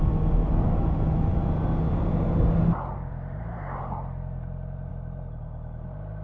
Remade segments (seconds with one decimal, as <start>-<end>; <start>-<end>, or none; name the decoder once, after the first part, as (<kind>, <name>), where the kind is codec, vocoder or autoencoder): none